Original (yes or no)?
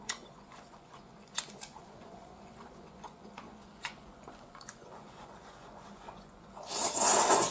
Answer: no